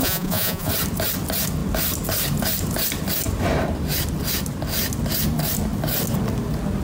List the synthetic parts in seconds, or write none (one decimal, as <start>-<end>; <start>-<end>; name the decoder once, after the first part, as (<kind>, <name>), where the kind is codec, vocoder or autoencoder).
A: 0.0-0.7 (vocoder, Vocos)